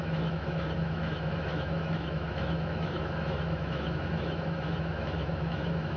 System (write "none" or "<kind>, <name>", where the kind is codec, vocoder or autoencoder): autoencoder, DAC-VAE